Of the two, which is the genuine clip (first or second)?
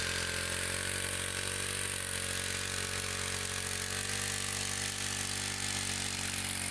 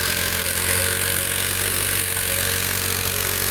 first